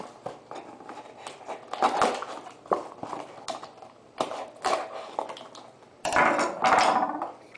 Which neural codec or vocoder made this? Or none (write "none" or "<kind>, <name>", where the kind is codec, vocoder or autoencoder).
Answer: none